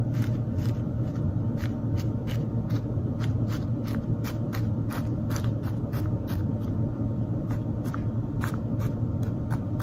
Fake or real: real